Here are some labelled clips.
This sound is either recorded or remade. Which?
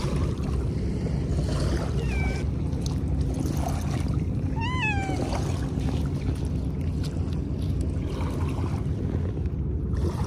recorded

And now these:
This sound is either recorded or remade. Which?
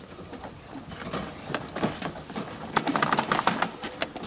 recorded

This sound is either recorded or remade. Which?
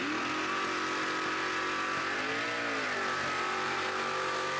recorded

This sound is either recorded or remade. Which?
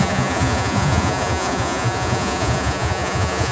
remade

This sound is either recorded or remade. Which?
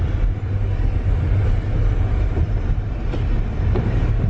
recorded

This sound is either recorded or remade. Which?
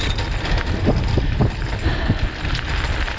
recorded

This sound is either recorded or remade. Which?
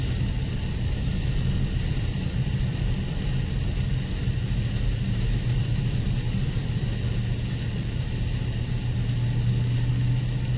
recorded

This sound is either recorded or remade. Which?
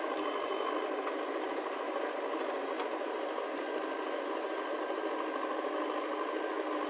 recorded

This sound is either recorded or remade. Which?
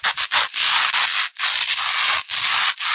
recorded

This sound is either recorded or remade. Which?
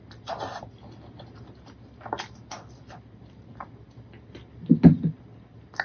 recorded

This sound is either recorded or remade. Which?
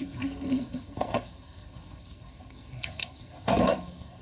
remade